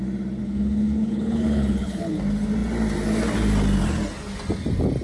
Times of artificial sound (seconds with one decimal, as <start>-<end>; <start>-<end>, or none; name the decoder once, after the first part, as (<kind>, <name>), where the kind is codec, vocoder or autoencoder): 0.4-2.2 (codec, HILCodec)